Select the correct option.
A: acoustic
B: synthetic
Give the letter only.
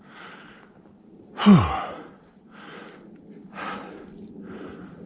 A